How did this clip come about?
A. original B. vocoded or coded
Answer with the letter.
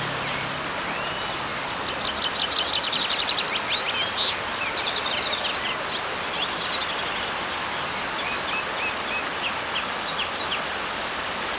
A